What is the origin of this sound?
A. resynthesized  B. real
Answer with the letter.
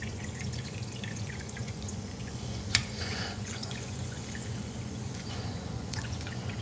A